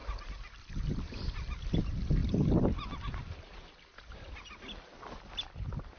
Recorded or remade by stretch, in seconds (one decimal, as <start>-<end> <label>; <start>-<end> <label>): 0.0-6.0 recorded